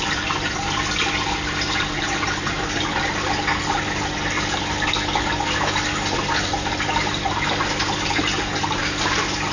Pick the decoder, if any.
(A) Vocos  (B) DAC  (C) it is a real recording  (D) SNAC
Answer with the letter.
C